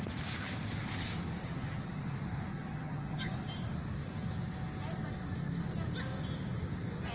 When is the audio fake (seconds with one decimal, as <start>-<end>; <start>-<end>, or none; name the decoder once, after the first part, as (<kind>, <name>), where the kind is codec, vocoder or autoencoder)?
1.4-2.0 (vocoder, HiFi-GAN); 2.5-3.3